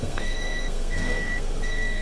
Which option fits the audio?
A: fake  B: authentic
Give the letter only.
A